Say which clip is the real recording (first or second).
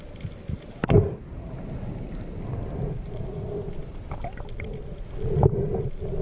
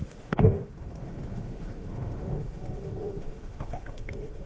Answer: first